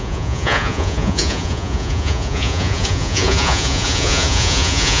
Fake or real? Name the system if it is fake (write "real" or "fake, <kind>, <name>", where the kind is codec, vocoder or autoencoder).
fake, vocoder, Vocos